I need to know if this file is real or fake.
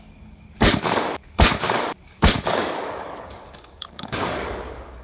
fake